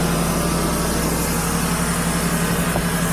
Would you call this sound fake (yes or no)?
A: no